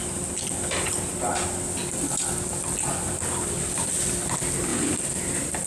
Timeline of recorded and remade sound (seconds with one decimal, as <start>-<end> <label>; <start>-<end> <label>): 0.0-4.7 recorded; 4.7-5.7 remade